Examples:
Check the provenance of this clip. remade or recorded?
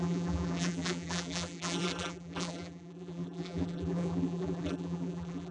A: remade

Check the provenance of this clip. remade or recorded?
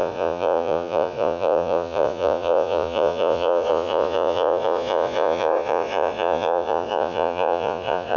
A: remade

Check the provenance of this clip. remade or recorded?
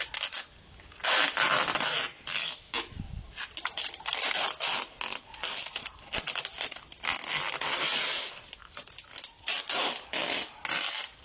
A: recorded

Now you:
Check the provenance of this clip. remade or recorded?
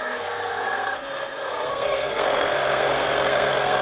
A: remade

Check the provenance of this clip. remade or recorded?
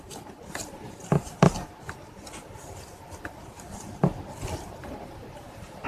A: recorded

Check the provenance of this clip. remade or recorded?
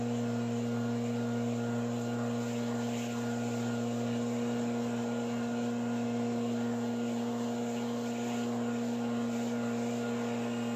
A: recorded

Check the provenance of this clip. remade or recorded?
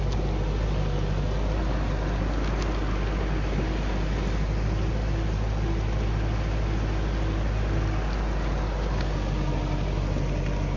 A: recorded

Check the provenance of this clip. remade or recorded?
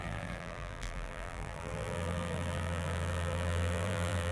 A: remade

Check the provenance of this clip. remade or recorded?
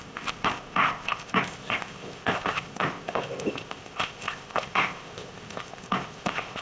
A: remade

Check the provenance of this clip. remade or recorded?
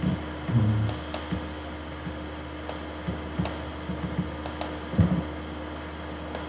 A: recorded